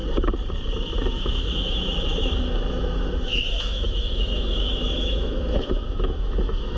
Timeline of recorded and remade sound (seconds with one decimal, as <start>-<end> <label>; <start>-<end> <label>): 0.0-0.8 recorded; 0.8-6.8 remade